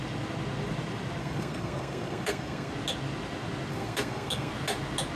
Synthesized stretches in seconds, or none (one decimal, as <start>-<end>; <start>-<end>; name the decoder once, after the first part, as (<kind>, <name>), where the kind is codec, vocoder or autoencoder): 1.2-2.7 (codec, SNAC); 3.7-4.5